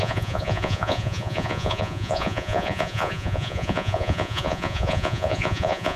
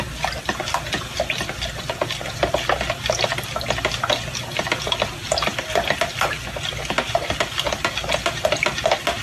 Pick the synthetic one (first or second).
first